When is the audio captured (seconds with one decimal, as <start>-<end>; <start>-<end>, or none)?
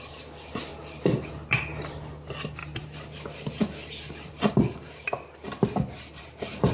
0.0-6.7